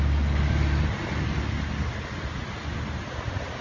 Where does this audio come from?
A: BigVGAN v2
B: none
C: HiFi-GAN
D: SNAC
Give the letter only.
B